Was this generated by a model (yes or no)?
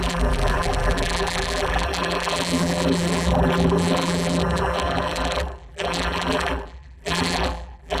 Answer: yes